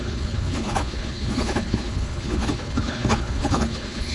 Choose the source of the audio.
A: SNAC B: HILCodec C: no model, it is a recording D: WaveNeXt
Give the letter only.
B